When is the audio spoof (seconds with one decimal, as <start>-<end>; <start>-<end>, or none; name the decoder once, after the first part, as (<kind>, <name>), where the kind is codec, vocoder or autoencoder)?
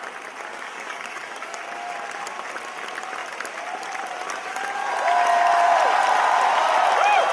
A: 0.5-1.6 (codec, DAC)